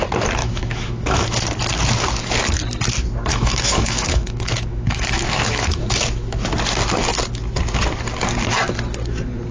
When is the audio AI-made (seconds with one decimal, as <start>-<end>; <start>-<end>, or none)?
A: 0.4-1.4; 3.3-6.5

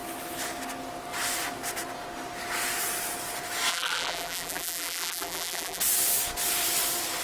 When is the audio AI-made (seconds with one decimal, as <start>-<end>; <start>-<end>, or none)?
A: 3.7-5.8

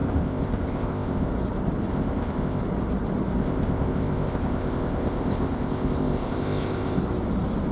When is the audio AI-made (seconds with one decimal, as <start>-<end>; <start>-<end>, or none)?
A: 0.0-1.3; 1.9-2.6; 3.4-7.0

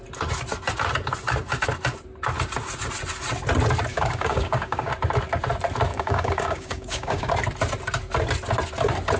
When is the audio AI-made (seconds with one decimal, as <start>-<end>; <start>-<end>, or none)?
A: 3.9-4.9; 5.9-7.3

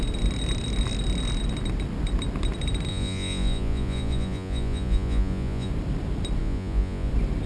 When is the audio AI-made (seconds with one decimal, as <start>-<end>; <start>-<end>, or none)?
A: 2.9-5.7; 6.4-7.1